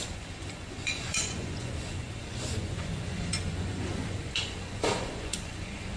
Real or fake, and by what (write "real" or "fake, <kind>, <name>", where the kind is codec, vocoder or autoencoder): fake, vocoder, Vocos